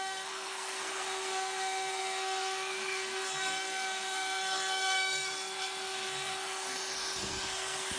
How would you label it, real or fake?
fake